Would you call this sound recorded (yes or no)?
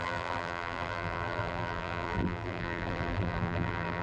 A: no